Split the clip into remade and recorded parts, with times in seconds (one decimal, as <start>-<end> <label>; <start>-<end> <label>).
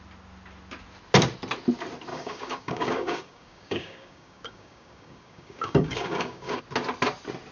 0.0-2.1 recorded; 2.1-6.6 remade; 6.6-7.5 recorded